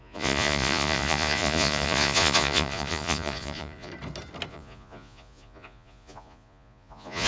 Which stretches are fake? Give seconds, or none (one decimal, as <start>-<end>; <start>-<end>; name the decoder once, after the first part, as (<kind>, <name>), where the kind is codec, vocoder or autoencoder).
0.0-3.9 (vocoder, Vocos); 4.5-7.3